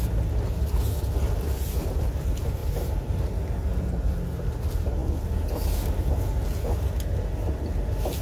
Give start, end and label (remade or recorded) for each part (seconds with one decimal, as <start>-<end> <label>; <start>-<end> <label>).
0.0-2.6 recorded; 2.6-3.3 remade; 3.3-8.2 recorded